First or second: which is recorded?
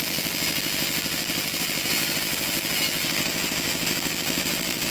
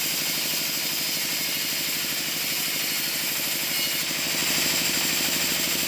second